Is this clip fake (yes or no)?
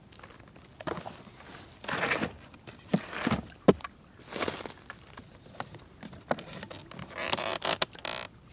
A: no